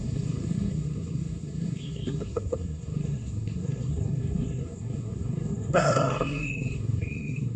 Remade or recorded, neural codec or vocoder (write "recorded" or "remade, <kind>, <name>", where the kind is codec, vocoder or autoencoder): remade, codec, SNAC